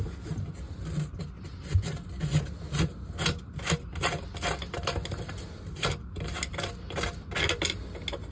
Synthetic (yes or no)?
no